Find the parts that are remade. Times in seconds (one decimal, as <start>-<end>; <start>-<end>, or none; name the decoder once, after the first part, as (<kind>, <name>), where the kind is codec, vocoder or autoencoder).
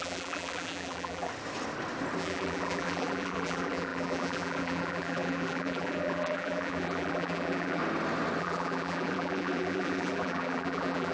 0.0-1.3 (vocoder, BigVGAN v2); 2.2-7.8; 8.4-11.1